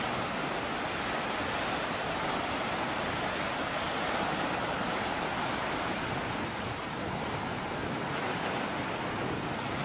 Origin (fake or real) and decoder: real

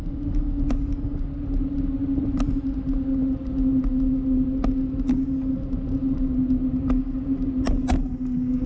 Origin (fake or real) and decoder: real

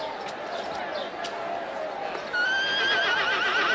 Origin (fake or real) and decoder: real